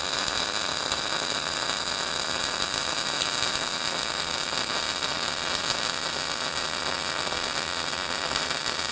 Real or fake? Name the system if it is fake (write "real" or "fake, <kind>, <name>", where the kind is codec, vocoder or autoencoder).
real